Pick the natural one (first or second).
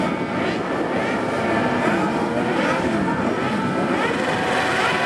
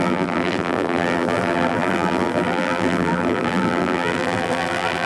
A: first